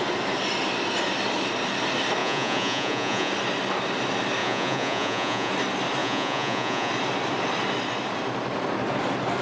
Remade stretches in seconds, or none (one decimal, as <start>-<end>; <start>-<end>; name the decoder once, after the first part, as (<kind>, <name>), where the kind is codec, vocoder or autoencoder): 2.2-3.3 (vocoder, Vocos); 4.4-5.5; 6.0-6.9